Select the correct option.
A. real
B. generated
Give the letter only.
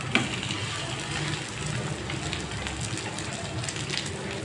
A